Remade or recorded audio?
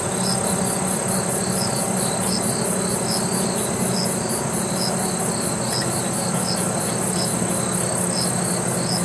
recorded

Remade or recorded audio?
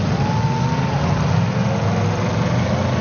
recorded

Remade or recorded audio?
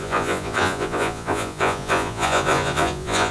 remade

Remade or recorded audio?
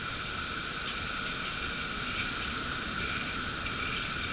recorded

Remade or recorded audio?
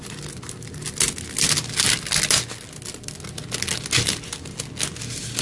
recorded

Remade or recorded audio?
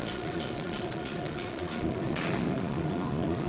remade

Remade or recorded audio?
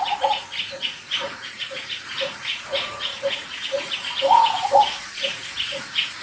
remade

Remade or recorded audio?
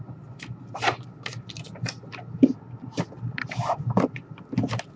recorded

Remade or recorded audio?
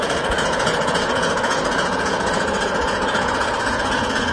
remade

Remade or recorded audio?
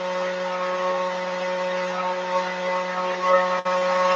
recorded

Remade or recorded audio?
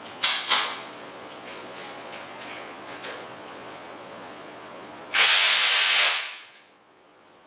remade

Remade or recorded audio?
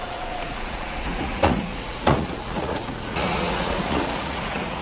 remade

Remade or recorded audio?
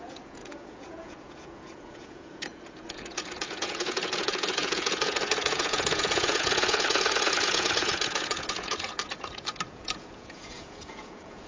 remade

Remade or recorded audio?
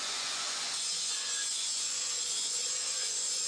remade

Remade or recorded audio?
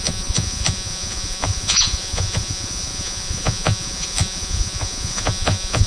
remade